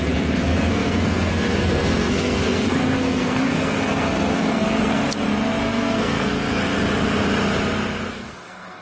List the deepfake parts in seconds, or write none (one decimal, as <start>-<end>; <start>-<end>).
0.0-5.0; 5.6-6.6; 8.1-8.8